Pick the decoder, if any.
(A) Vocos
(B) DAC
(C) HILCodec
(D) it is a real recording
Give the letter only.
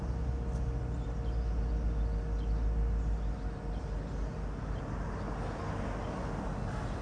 D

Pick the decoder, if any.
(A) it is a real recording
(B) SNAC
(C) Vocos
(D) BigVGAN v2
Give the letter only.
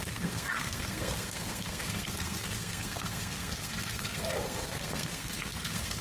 B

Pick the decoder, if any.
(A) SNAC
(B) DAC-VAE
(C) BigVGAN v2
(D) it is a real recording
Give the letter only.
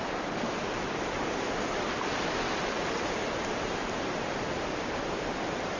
C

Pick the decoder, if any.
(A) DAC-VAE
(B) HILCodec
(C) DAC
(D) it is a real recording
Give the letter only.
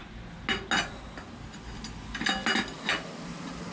D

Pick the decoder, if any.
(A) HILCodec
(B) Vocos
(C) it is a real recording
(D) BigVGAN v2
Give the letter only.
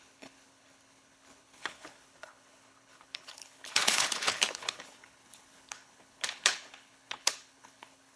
A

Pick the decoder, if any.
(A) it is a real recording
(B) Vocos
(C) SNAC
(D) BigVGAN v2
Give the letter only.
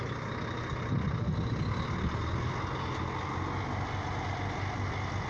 A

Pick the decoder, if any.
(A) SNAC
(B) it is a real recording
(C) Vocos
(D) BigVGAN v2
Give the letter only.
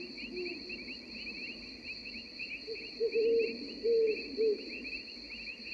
B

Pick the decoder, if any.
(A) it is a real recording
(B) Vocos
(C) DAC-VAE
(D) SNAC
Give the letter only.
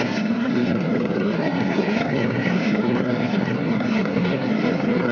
D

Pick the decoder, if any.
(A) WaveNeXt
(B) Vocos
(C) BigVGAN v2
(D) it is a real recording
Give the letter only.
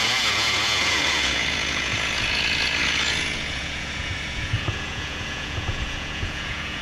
B